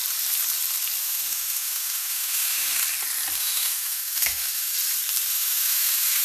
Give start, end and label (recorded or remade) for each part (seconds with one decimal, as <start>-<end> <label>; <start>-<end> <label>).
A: 0.0-1.0 recorded; 1.0-2.8 remade; 2.8-3.4 recorded; 3.4-4.7 remade; 4.7-5.3 recorded; 5.3-6.2 remade